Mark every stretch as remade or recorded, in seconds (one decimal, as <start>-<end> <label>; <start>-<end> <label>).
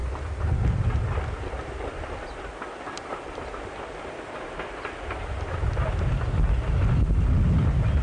0.0-8.0 recorded